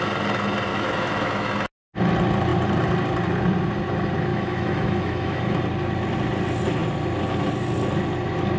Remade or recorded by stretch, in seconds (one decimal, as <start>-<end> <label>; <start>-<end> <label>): 0.0-0.7 recorded; 0.7-1.5 remade; 1.5-4.3 recorded; 4.3-5.6 remade; 5.6-8.6 recorded